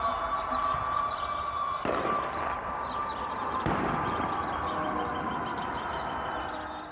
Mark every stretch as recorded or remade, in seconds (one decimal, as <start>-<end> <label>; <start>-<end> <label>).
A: 0.0-3.0 recorded; 3.0-6.5 remade; 6.5-6.9 recorded